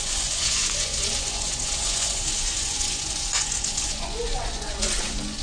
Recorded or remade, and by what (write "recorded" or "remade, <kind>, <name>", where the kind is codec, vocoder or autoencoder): remade, vocoder, Vocos